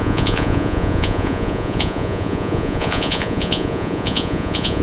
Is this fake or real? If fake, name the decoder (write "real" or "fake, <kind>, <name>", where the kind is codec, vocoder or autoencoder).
fake, vocoder, Vocos